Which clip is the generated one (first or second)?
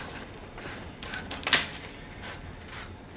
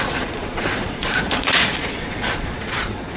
second